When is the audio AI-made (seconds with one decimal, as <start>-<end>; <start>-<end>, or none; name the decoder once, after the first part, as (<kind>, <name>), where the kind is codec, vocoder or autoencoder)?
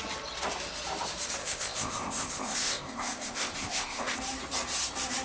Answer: 1.4-4.2 (codec, ZipCodec)